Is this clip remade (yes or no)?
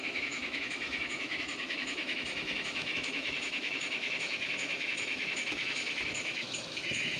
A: yes